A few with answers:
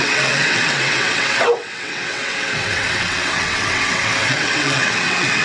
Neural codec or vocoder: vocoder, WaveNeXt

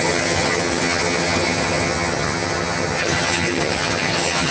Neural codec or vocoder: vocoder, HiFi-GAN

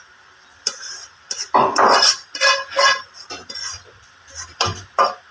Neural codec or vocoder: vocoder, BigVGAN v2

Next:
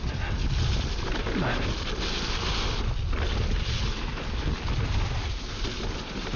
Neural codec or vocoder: none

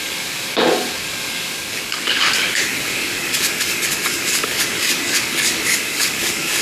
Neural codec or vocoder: codec, DAC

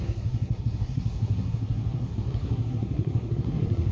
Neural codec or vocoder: codec, SNAC